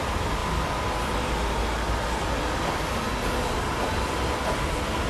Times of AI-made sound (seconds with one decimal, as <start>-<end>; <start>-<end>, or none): none